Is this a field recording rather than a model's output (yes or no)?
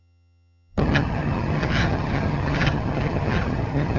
no